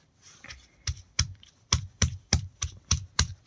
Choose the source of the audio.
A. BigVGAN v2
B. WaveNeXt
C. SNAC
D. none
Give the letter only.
A